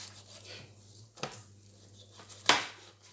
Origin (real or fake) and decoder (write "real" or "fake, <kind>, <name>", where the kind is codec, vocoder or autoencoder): real